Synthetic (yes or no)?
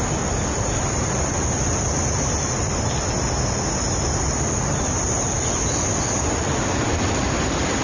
no